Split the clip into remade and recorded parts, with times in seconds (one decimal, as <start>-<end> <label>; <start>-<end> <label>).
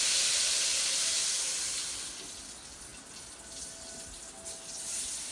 0.0-5.3 recorded